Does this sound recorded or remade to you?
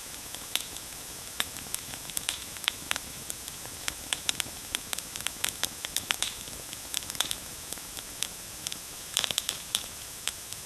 remade